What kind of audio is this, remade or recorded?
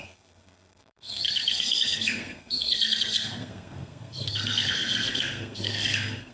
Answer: remade